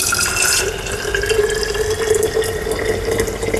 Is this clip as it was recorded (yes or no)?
yes